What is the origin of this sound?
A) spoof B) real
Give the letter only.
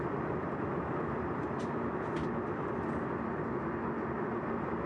B